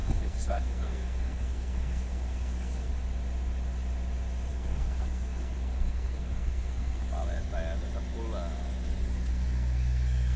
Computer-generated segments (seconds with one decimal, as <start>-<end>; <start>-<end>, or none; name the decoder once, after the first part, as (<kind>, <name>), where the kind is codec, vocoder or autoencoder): 0.0-2.9 (codec, SNAC); 4.5-7.0; 9.3-10.4